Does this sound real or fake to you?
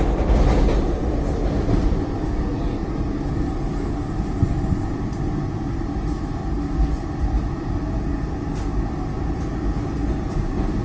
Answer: real